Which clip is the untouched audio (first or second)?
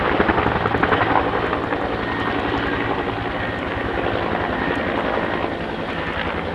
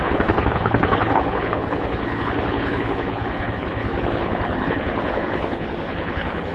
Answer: first